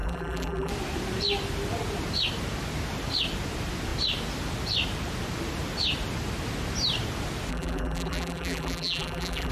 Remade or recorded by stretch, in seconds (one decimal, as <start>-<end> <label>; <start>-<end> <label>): 0.0-0.7 remade; 0.7-7.5 recorded; 7.5-9.5 remade